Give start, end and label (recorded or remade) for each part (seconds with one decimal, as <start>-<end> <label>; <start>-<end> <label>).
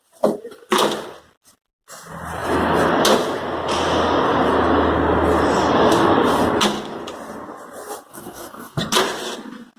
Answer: 0.0-8.1 recorded; 8.1-8.8 remade; 8.8-9.8 recorded